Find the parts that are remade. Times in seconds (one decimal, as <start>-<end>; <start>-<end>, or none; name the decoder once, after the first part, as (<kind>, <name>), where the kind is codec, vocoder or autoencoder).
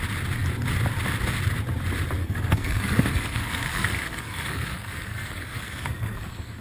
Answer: 2.2-6.6 (codec, SNAC)